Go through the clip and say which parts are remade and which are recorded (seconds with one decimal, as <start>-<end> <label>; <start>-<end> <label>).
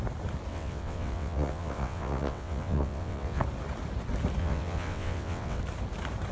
0.0-0.5 recorded; 0.5-3.4 remade; 3.4-4.4 recorded; 4.4-5.6 remade; 5.6-6.3 recorded